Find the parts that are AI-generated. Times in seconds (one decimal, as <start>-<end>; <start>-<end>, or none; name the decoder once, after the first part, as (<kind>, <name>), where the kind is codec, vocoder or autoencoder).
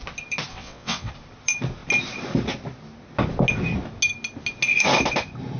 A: 0.5-1.1 (vocoder, WaveNeXt)